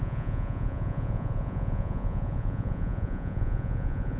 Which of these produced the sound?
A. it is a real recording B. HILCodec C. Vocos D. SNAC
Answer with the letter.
C